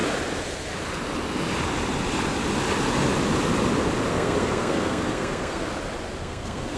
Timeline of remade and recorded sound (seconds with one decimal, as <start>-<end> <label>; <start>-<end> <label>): 0.0-4.1 recorded; 4.1-5.7 remade; 5.7-6.2 recorded; 6.2-6.8 remade